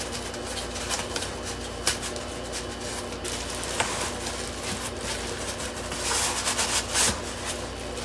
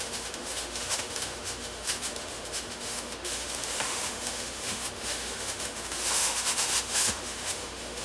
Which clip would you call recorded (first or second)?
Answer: first